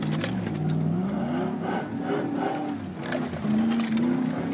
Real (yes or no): yes